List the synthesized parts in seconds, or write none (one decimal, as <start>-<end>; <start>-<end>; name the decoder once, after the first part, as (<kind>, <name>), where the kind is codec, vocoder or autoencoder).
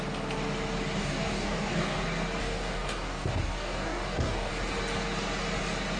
1.0-2.0 (codec, DAC); 2.4-4.5